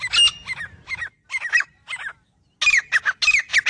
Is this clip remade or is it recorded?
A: recorded